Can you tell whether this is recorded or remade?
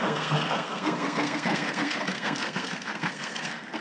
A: remade